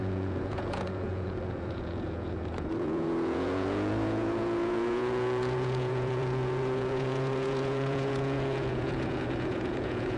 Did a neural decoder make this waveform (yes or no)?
yes